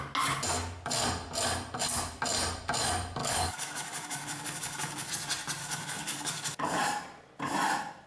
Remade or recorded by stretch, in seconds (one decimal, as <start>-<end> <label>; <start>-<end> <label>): 0.0-3.2 recorded; 3.2-5.1 remade; 5.1-5.6 recorded; 5.6-6.8 remade; 6.8-8.1 recorded